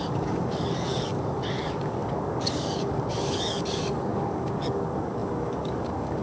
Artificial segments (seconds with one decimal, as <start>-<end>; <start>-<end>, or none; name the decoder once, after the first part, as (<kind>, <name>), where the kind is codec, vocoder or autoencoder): 0.0-6.2 (codec, DAC)